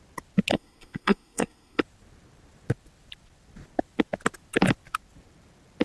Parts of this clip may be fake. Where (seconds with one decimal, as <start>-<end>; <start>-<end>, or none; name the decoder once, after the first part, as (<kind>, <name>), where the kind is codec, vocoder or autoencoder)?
0.5-1.8 (codec, SNAC)